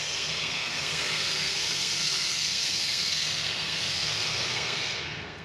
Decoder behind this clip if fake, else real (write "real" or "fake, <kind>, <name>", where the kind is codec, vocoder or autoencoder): fake, codec, SNAC